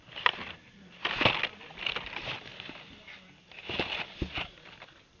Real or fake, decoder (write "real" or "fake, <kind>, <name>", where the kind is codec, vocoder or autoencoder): real